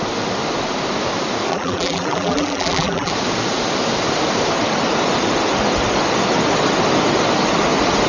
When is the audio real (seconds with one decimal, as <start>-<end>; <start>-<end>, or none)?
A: 0.0-1.5; 3.1-8.1